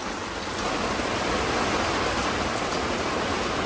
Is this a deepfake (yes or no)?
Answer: no